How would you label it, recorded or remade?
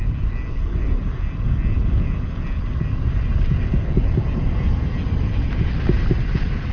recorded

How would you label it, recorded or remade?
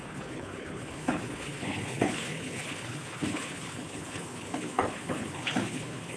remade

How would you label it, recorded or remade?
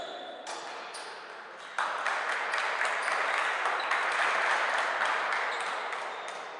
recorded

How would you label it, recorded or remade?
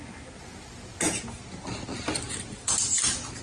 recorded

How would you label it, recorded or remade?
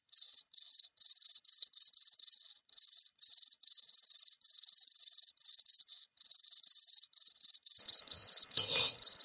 remade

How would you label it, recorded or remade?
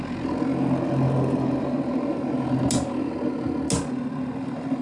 recorded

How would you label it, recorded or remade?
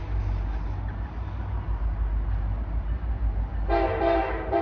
recorded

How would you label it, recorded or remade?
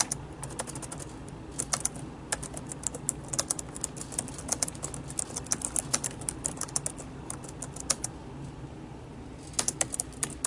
recorded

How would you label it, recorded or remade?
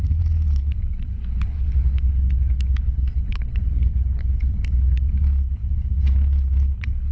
remade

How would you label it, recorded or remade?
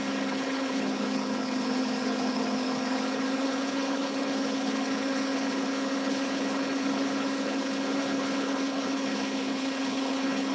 remade